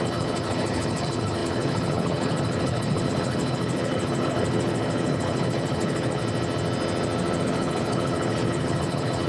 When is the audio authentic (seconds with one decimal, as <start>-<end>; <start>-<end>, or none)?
6.2-7.4